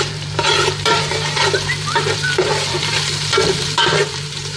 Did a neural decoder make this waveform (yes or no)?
yes